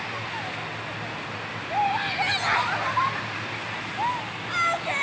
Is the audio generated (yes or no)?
no